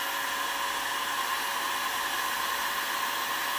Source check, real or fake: real